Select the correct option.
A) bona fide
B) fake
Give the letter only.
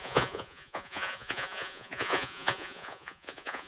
B